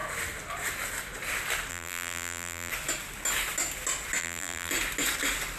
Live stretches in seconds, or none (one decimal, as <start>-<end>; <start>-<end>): 0.0-1.7; 2.7-4.2; 4.7-5.6